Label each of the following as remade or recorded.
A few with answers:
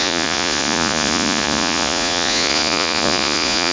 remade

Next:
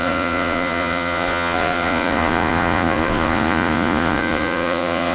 remade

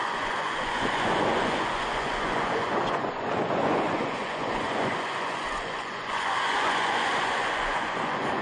remade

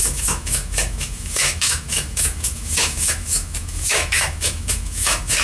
remade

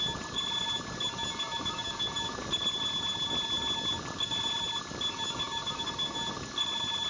recorded